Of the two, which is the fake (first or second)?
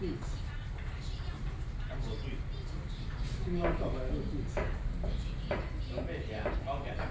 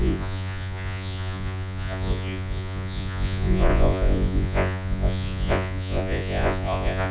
second